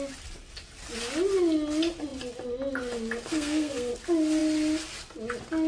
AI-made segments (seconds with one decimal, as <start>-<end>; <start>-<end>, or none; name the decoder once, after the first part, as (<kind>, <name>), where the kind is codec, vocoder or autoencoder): 3.3-3.9 (codec, SNAC)

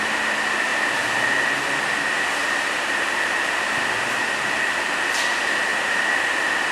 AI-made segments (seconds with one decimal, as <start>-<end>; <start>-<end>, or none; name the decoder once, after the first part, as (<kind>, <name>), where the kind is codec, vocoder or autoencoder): 0.7-1.2 (vocoder, BigVGAN v2); 2.4-3.7; 5.7-6.3

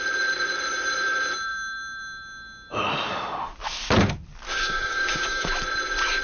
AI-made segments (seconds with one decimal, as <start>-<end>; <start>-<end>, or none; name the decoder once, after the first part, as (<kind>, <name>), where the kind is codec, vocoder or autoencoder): 4.5-5.5 (codec, DAC)

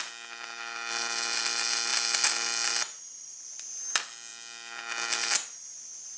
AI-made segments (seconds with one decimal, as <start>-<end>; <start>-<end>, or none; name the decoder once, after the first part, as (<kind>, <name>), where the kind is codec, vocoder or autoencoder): none

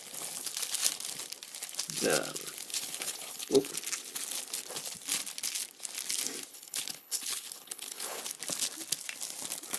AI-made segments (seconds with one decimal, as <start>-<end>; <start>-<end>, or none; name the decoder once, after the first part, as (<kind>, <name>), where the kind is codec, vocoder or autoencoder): 2.7-3.7 (codec, HILCodec); 6.5-8.2

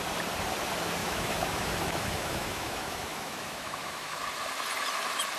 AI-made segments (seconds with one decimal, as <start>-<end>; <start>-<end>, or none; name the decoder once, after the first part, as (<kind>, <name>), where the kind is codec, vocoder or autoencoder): 1.0-4.2 (autoencoder, DAC-VAE)

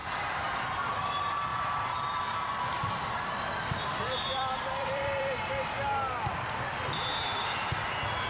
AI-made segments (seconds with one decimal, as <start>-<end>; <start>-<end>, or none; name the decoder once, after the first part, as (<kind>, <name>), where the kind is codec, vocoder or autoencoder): 0.0-0.6 (vocoder, BigVGAN v2); 1.5-5.5